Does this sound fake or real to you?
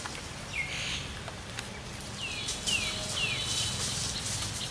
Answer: real